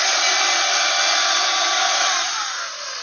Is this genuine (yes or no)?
yes